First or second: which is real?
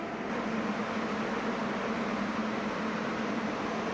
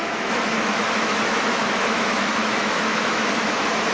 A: first